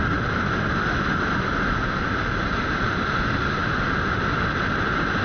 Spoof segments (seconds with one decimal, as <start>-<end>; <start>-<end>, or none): none

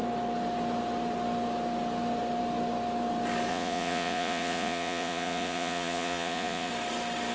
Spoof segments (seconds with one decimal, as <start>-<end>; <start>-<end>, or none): 3.5-6.7

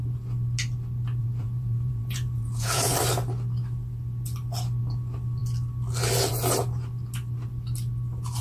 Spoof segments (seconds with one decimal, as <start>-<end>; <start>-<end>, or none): 1.2-2.9

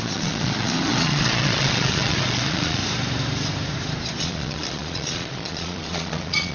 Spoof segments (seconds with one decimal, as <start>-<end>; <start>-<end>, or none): 0.0-2.8; 4.2-6.5

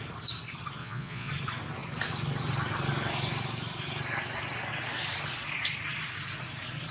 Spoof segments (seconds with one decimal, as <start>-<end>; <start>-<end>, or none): 0.8-1.3

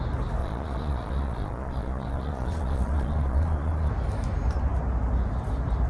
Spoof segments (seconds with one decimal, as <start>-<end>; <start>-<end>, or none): 0.4-3.9